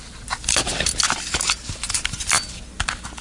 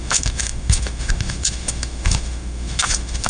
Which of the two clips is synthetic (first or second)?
second